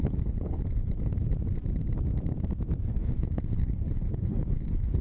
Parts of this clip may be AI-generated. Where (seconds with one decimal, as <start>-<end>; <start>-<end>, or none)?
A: 0.0-1.2; 2.9-5.0